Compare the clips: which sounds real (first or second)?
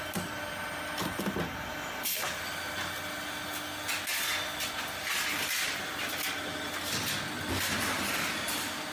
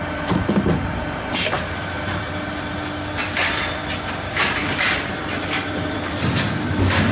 first